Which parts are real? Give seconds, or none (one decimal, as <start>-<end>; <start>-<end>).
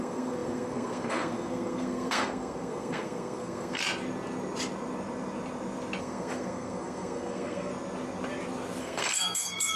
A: 3.8-6.0; 7.7-8.8